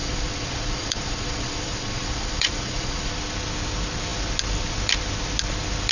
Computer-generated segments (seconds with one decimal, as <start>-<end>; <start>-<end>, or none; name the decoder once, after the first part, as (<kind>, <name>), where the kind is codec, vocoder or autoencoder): 0.0-3.1 (vocoder, Vocos)